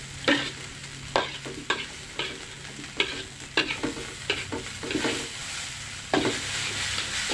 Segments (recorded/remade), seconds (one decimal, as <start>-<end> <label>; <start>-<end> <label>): 0.0-7.3 recorded